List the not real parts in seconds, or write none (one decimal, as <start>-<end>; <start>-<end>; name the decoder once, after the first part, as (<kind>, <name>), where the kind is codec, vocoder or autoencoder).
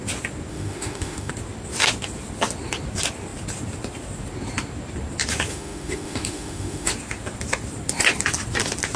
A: 0.5-1.3 (autoencoder, DAC-VAE); 5.5-6.9